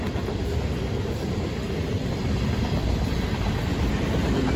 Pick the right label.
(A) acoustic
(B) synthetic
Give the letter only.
B